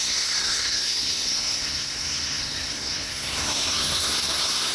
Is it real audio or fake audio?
fake